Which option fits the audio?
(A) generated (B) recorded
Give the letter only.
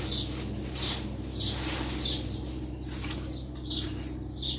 B